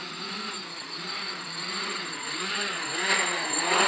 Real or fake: fake